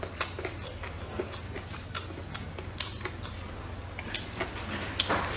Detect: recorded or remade recorded